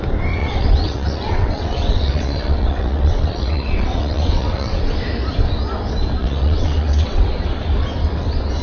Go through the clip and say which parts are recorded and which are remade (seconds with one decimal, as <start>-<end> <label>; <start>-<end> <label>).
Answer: 0.0-0.4 recorded; 0.4-4.8 remade; 4.8-6.2 recorded; 6.2-7.3 remade; 7.3-8.6 recorded